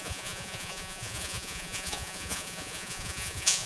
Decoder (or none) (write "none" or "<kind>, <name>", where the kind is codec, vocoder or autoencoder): vocoder, Vocos